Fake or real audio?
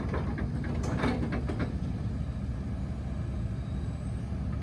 real